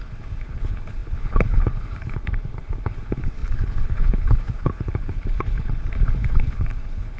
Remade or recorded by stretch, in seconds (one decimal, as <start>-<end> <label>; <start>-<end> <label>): 0.0-7.2 remade